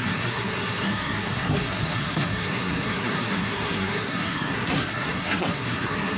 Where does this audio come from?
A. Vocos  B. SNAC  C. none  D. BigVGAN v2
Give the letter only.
B